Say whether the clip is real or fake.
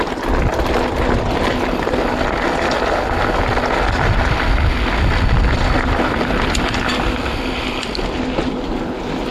real